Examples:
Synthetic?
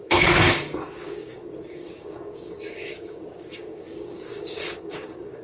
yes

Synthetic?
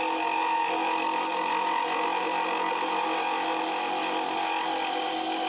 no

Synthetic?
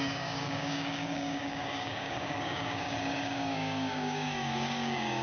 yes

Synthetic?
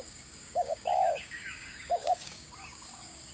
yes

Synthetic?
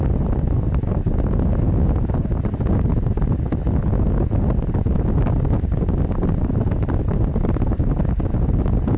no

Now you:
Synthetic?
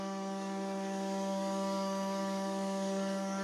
yes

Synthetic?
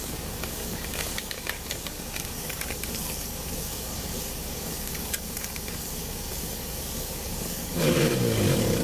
yes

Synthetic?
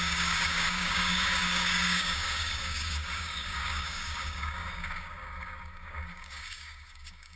yes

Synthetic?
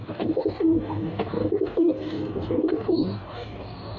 yes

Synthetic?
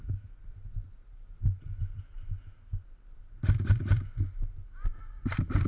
no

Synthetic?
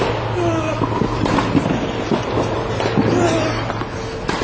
no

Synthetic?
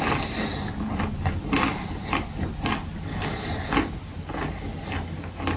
no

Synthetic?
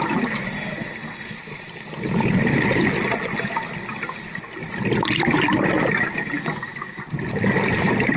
no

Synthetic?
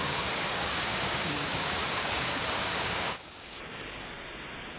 yes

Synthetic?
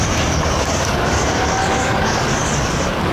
yes